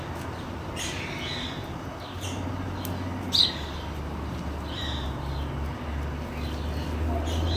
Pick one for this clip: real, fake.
real